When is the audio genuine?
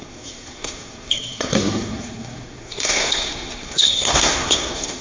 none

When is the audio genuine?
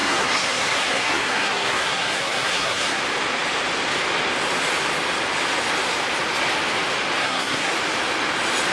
3.0-7.2; 7.7-8.7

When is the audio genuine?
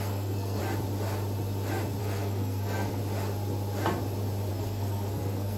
0.6-2.0; 3.0-4.5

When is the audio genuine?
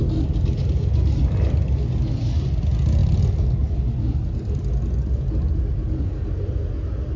0.0-7.2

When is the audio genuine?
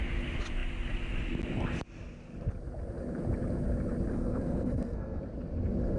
0.0-4.1; 5.2-6.0